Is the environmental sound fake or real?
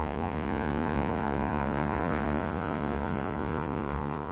fake